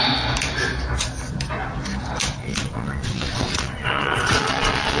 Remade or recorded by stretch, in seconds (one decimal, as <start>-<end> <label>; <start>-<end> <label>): 0.0-2.4 recorded; 2.4-5.0 remade